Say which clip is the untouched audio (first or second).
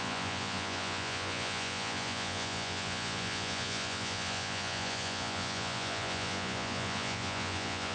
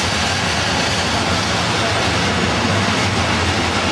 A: second